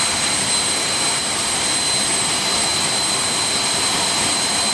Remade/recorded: recorded